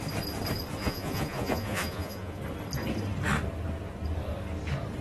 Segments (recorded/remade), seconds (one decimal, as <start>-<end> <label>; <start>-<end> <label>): 0.0-0.8 recorded; 0.8-2.4 remade; 2.4-5.0 recorded